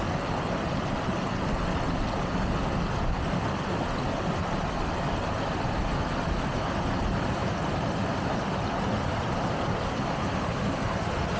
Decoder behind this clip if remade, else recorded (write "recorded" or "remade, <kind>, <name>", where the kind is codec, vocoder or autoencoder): recorded